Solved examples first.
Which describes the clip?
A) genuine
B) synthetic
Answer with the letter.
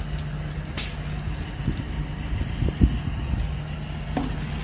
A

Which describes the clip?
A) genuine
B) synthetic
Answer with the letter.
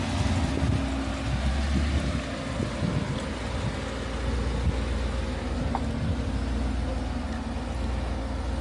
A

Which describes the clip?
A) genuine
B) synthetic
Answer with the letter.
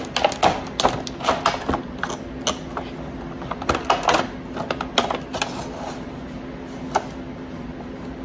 A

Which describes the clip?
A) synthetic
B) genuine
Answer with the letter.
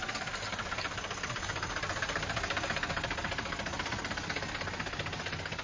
B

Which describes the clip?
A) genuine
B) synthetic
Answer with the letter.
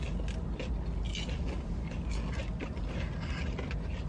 A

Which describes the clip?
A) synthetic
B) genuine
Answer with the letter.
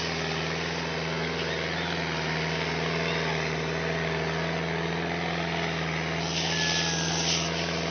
B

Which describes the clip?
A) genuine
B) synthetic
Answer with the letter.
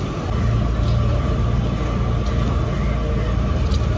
A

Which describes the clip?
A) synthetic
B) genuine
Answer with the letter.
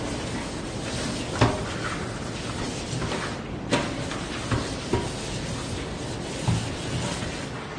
B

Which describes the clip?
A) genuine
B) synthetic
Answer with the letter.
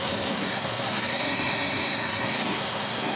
B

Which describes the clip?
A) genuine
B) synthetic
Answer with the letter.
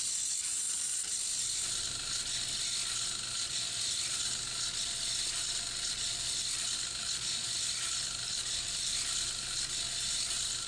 A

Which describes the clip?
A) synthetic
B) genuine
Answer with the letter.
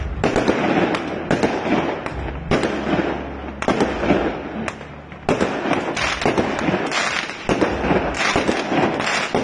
B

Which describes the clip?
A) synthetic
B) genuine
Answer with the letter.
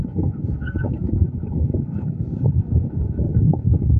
A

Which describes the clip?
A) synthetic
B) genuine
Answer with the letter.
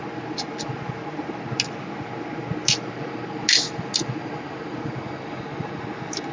B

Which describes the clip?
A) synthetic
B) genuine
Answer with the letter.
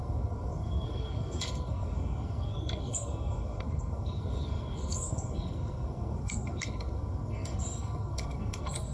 A